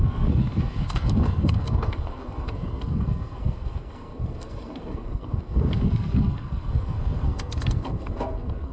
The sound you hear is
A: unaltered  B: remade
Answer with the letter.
B